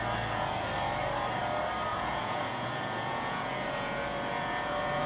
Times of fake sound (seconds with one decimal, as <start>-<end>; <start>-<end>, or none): 1.9-5.1